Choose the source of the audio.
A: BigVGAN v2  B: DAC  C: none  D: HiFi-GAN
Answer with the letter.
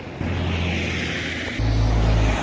C